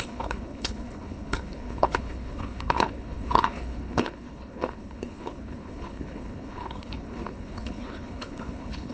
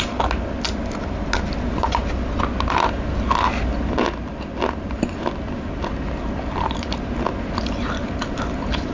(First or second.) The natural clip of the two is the second